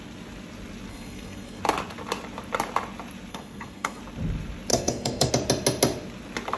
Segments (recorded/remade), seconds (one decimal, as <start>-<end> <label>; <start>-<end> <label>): 0.0-0.9 recorded; 0.9-1.6 remade; 1.6-3.3 recorded; 3.3-4.0 remade; 4.0-4.7 recorded; 4.7-5.3 remade; 5.3-6.6 recorded